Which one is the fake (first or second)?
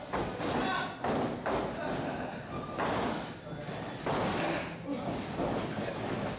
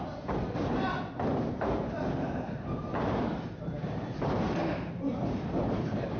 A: second